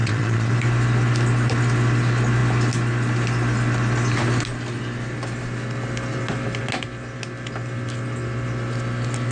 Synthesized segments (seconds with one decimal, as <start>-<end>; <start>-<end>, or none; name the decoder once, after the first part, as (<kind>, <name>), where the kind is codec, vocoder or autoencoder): 0.0-0.5 (vocoder, Vocos)